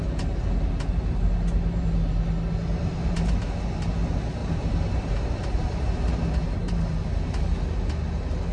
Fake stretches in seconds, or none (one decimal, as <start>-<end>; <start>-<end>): 2.8-3.3; 4.4-6.3